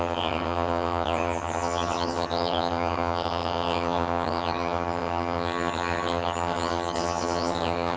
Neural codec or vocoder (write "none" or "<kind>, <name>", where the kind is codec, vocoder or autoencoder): vocoder, HiFi-GAN